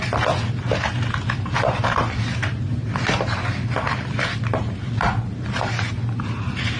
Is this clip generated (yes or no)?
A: no